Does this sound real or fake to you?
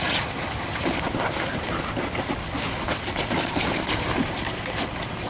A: real